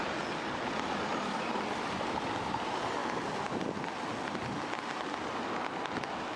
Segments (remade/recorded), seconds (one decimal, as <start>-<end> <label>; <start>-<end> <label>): 0.0-3.0 remade; 3.0-6.4 recorded